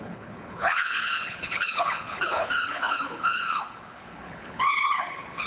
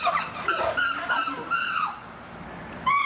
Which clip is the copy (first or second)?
first